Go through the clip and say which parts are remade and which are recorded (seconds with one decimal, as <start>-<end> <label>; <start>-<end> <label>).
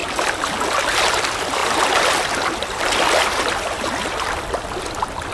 0.0-1.6 recorded; 1.6-4.8 remade; 4.8-5.3 recorded